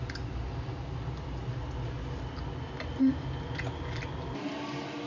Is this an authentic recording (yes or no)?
yes